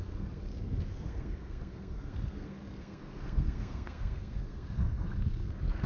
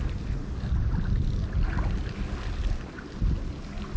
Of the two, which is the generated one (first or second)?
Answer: first